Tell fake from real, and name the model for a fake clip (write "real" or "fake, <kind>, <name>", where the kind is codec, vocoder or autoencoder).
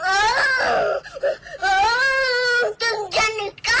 real